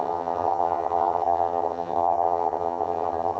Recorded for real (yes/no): no